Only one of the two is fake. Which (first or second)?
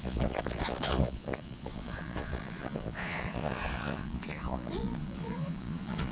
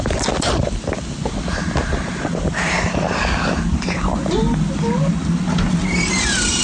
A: first